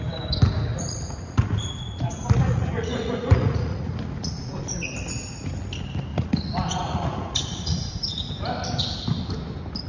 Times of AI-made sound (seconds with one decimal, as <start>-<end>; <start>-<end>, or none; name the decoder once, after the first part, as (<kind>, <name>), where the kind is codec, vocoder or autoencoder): 0.7-4.6 (vocoder, Vocos); 6.1-8.3